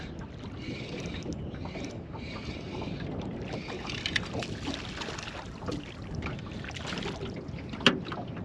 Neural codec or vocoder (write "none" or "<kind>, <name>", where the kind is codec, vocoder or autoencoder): none